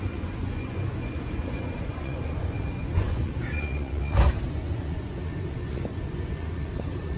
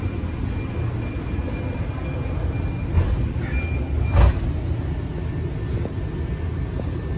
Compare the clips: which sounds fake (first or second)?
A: first